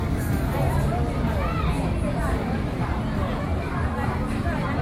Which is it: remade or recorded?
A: recorded